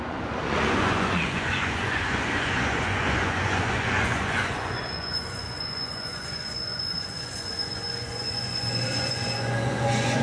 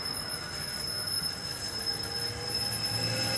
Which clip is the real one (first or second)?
second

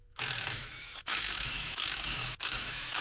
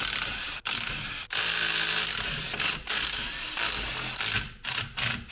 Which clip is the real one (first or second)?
second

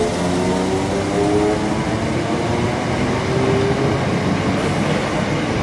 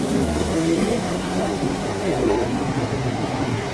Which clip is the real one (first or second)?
first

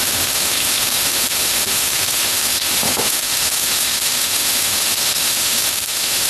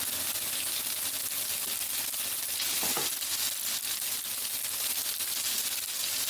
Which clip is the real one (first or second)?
second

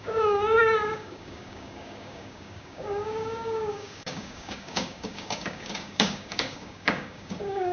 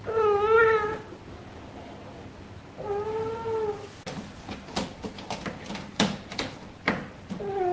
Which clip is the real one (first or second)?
second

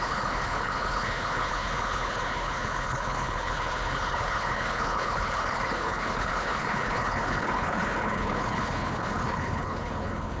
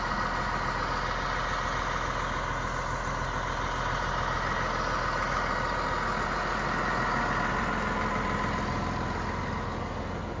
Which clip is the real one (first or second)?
second